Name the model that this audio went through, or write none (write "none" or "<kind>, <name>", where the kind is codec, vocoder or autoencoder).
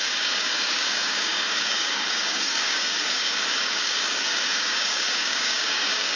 codec, DAC